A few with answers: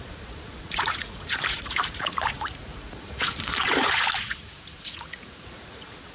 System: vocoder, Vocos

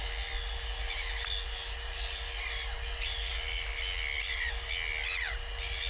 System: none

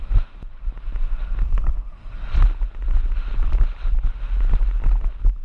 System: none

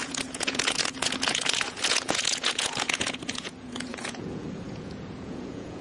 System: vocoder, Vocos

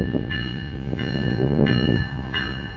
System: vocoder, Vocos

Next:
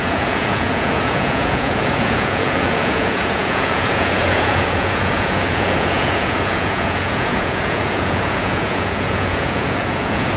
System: vocoder, Vocos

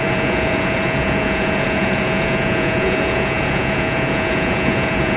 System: vocoder, Vocos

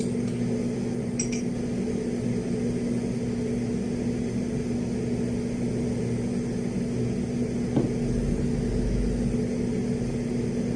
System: none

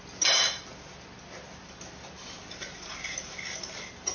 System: none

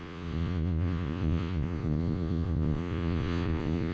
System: vocoder, Vocos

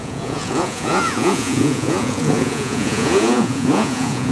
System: vocoder, Vocos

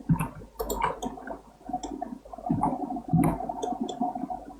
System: none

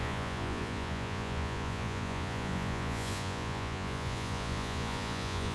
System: vocoder, Vocos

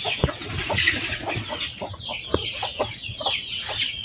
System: vocoder, Vocos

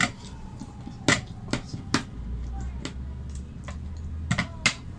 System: none